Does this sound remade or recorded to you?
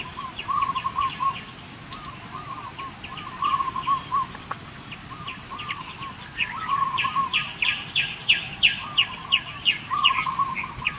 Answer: recorded